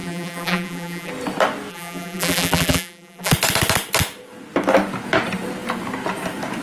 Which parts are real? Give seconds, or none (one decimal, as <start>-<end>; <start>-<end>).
1.1-1.7; 3.3-6.6